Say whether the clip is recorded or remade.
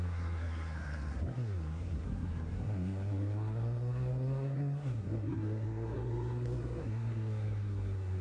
remade